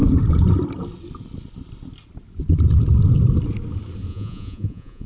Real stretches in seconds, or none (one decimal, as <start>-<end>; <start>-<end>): 0.0-4.1